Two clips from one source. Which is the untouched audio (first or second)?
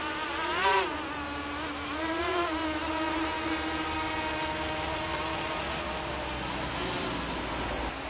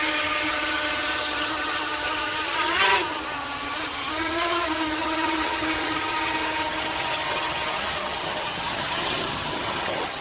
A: first